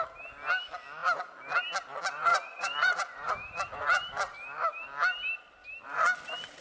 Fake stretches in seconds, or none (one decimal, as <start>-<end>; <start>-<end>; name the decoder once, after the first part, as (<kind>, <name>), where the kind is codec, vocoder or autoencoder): 2.3-3.3 (vocoder, Vocos)